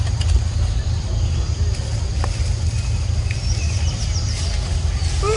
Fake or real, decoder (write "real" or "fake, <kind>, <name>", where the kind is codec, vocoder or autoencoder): real